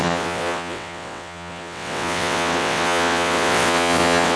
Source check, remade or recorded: remade